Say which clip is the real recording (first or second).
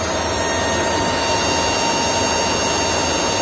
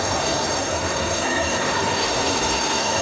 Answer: first